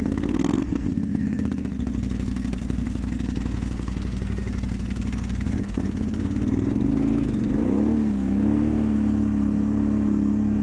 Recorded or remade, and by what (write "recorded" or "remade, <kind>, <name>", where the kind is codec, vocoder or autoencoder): remade, codec, SNAC